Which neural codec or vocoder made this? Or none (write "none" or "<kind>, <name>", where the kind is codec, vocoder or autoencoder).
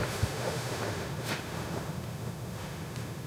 autoencoder, DAC-VAE